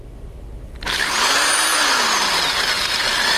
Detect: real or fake fake